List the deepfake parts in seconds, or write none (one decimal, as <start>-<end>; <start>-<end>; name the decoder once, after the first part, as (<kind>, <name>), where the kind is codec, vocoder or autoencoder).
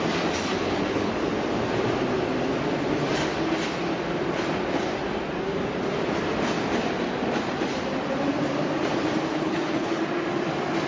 0.5-1.1 (codec, HILCodec); 9.3-10.0